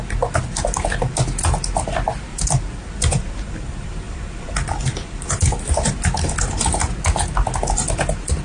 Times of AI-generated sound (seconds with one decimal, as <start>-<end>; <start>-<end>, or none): 2.3-6.2